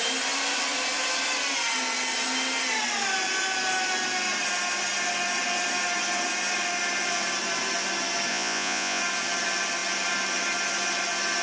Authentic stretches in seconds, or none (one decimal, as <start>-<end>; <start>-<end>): 0.0-8.3; 9.0-11.4